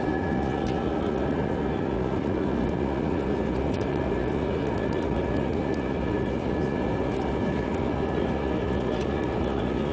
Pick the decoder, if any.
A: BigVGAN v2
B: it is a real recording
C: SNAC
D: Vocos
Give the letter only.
D